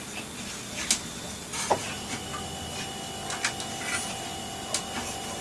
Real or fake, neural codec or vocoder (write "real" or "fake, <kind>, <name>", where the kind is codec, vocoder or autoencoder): real